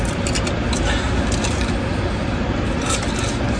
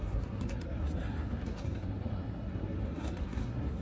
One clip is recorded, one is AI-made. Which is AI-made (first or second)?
second